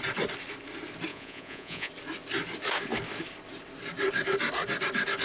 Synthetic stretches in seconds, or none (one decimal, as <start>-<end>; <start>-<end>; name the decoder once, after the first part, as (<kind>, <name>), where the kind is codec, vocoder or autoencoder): 1.1-1.9 (vocoder, Vocos)